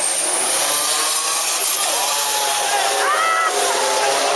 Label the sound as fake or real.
real